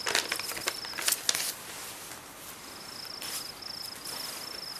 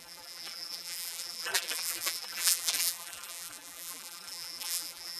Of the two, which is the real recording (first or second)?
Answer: first